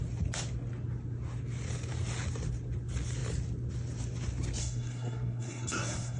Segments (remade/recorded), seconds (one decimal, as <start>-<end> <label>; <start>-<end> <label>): 0.0-4.6 recorded; 4.6-6.2 remade